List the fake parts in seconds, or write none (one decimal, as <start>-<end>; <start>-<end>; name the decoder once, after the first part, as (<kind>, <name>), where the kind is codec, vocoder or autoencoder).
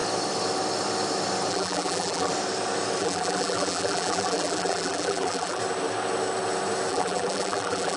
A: 1.5-2.3 (vocoder, BigVGAN v2); 3.0-5.6; 6.9-8.0